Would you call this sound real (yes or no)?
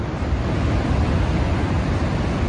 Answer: yes